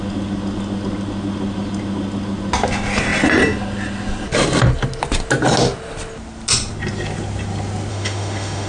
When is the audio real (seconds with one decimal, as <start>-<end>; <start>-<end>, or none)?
0.0-7.9